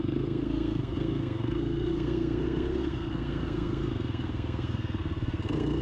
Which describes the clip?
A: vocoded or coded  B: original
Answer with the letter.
A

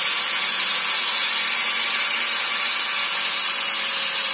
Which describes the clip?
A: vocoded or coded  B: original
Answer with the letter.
B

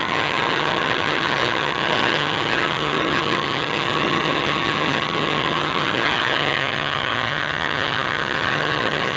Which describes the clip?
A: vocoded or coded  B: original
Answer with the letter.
A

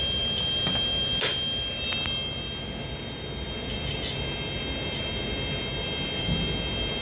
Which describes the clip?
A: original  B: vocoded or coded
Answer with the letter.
B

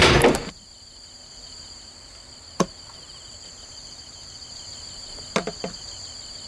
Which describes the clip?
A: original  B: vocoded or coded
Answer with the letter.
A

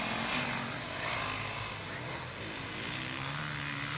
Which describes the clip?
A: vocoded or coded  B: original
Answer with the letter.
B